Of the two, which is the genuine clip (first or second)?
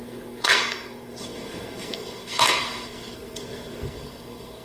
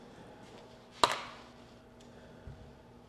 second